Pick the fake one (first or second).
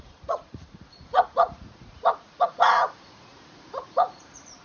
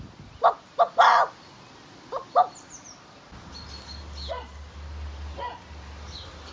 first